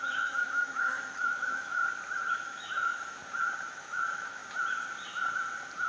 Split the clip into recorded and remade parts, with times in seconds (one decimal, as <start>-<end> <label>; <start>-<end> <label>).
0.0-1.8 remade; 1.8-2.3 recorded; 2.3-3.2 remade; 3.2-3.8 recorded; 3.8-4.4 remade; 4.4-5.9 recorded

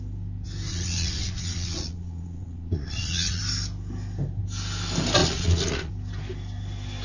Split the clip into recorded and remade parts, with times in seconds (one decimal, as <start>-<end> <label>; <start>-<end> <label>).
0.0-0.7 recorded; 0.7-3.4 remade; 3.4-5.2 recorded; 5.2-5.9 remade; 5.9-7.0 recorded

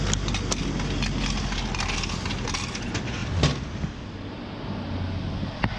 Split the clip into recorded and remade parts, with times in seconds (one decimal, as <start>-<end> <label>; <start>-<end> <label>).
0.0-5.8 recorded

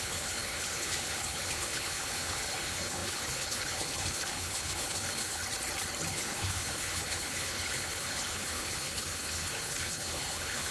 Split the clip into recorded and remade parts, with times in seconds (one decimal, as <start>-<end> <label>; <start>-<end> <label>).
0.0-5.4 remade; 5.4-6.1 recorded; 6.1-10.7 remade

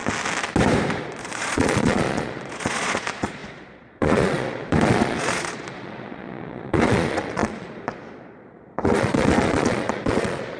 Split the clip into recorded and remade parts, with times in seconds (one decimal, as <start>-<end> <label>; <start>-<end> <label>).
0.0-1.0 recorded; 1.0-10.6 remade

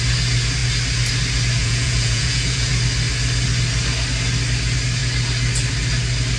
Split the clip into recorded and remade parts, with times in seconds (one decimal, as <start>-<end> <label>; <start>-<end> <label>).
0.0-1.6 recorded; 1.6-2.7 remade; 2.7-6.4 recorded

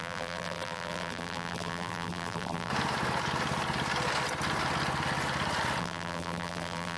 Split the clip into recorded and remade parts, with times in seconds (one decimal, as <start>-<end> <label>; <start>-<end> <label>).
0.0-2.7 remade; 2.7-5.8 recorded; 5.8-7.0 remade